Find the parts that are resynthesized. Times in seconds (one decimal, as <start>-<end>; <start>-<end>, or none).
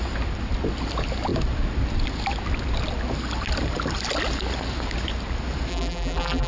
5.7-6.5